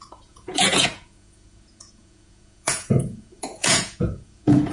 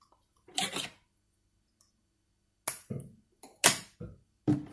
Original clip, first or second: second